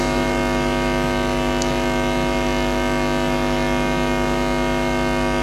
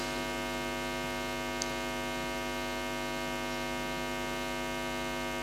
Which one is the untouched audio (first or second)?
second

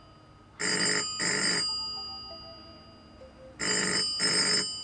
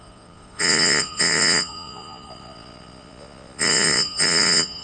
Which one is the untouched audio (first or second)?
first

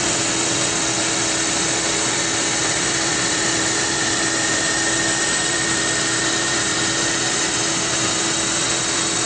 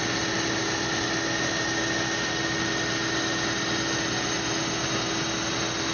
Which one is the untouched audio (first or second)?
second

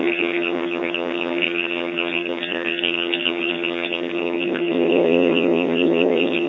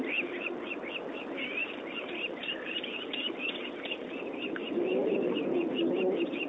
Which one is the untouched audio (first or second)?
second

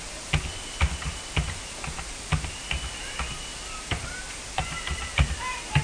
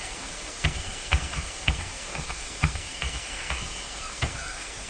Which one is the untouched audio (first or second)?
first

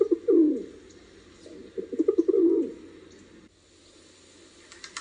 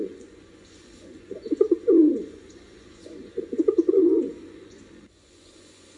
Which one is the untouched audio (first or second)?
first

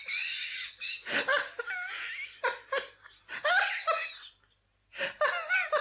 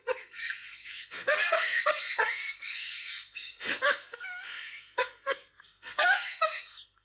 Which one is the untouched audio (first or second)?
first